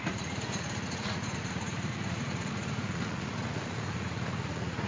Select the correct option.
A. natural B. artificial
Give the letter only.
B